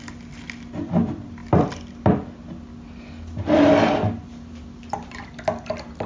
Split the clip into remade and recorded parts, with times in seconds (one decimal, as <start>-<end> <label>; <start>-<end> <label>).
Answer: 0.0-6.1 recorded